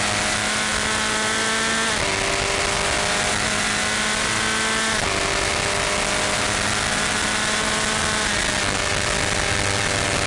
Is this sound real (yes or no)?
yes